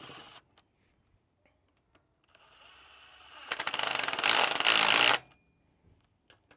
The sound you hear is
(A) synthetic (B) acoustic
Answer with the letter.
B